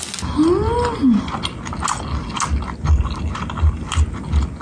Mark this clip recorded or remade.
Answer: recorded